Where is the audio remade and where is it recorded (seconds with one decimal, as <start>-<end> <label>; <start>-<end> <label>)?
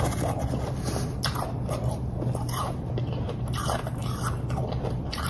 0.0-5.3 recorded